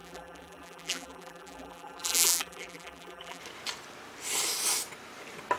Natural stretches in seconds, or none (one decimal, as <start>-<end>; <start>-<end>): 3.4-5.6